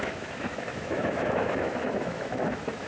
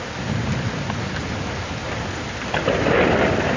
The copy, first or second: first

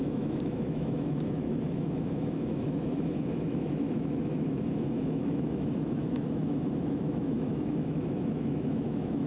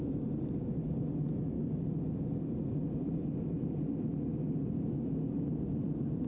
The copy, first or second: first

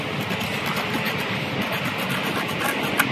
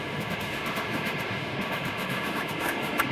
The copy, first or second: second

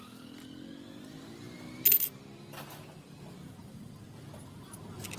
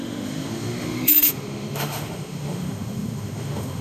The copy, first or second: second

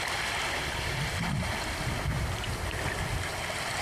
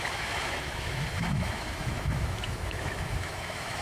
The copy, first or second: second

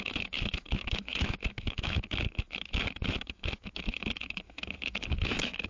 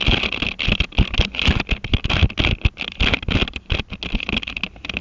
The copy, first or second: first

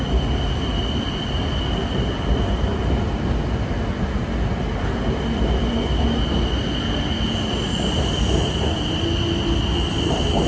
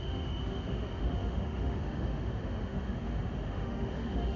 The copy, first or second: second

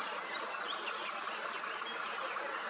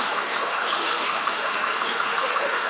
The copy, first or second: second